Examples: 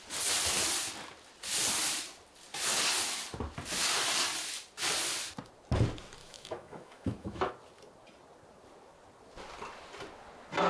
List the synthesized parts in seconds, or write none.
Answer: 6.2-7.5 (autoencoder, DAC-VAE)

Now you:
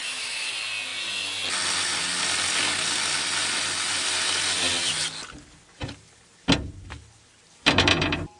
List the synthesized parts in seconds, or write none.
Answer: 0.0-0.5 (autoencoder, DAC-VAE)

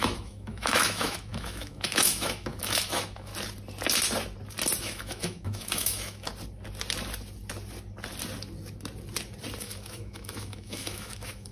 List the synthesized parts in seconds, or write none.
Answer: 0.0-3.3 (autoencoder, DAC-VAE); 4.8-6.3; 9.6-11.5

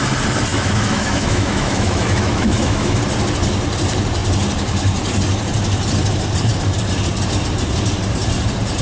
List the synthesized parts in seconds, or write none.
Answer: 0.5-3.0 (autoencoder, DAC-VAE)

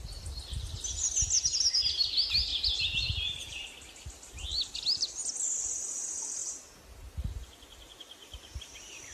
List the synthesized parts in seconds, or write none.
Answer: none